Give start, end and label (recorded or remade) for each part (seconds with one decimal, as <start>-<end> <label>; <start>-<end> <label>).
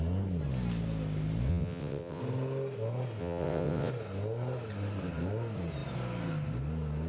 0.0-1.5 recorded; 1.5-2.2 remade; 2.2-3.2 recorded; 3.2-3.9 remade; 3.9-7.1 recorded